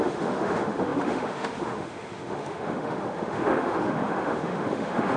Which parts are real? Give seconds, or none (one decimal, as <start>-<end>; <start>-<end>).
none